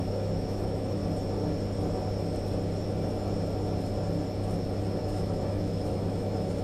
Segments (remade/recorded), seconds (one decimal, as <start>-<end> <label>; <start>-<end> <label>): 0.0-1.0 remade; 1.0-5.0 recorded; 5.0-6.6 remade